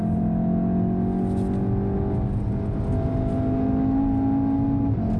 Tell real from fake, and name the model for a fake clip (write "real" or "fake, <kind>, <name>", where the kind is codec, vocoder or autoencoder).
real